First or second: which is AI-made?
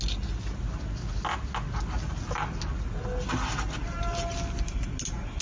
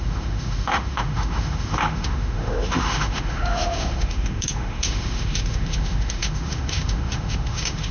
second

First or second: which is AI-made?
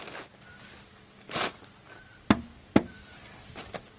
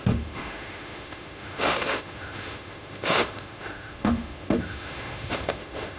second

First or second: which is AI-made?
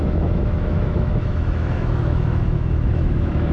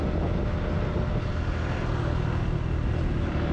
first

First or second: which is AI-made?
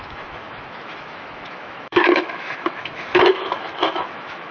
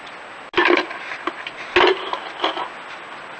first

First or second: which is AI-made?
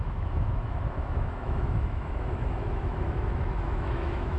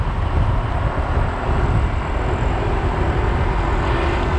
first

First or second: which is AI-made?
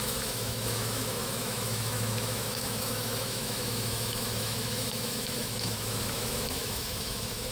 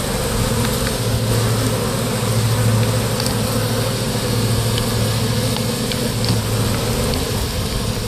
first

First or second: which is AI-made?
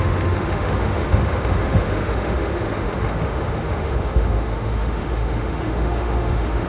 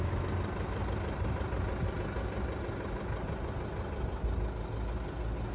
first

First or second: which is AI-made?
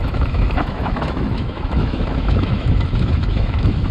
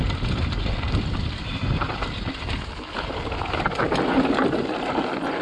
first